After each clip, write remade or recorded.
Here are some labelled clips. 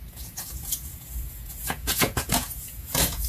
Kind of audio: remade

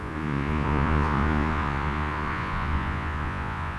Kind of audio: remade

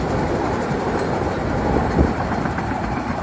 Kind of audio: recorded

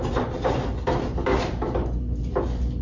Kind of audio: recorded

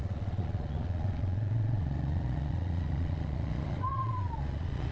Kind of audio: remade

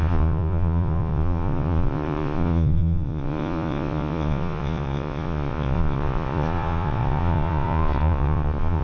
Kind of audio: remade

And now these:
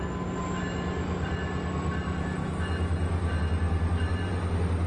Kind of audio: recorded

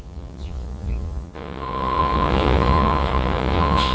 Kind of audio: remade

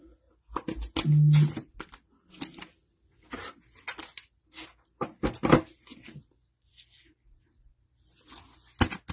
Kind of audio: recorded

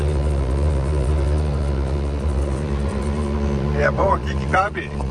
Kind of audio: remade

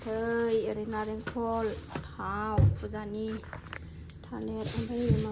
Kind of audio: recorded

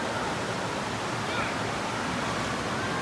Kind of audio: recorded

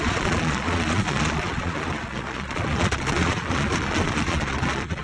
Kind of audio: remade